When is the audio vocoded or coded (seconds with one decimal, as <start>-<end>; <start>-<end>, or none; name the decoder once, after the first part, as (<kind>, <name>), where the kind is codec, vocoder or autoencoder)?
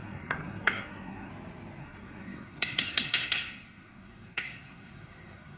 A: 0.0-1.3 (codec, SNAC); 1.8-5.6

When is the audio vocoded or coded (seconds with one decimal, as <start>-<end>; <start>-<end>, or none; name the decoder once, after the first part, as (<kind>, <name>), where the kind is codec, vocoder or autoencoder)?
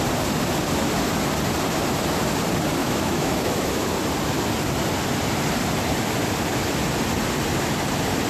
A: 2.8-3.9 (autoencoder, DAC-VAE)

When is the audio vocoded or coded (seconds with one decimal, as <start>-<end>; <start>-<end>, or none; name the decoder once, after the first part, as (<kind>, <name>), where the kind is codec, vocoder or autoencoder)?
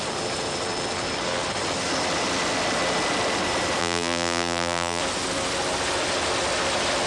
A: 3.8-5.0 (vocoder, BigVGAN v2)